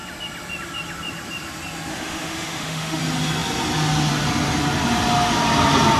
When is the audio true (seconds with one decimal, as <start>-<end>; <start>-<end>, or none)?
0.0-1.9; 3.0-6.0